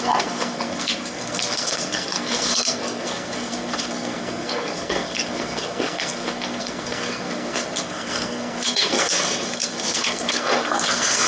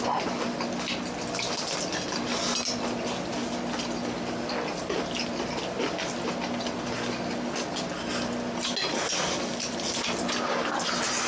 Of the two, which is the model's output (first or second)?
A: first